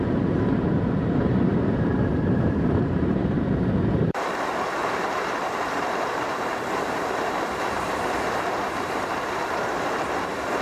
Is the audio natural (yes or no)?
no